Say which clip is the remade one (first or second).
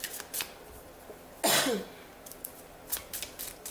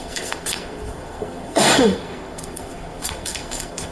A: second